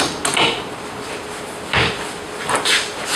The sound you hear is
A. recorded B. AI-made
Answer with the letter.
A